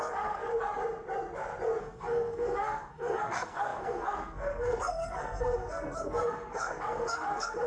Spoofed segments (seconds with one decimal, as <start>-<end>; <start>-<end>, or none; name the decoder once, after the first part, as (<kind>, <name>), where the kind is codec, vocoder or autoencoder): 0.0-0.5 (codec, SNAC); 1.8-7.7